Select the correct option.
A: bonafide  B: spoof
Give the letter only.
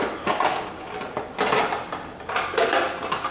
A